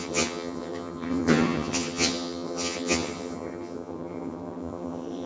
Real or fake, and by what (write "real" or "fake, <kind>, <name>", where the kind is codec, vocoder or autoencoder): fake, vocoder, HiFi-GAN